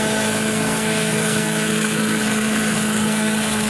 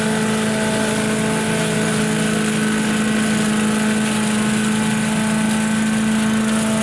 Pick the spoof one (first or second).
first